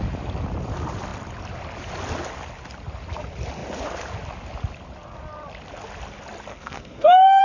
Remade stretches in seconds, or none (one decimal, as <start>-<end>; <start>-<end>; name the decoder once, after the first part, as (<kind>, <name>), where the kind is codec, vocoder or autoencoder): 6.5-7.4 (codec, SNAC)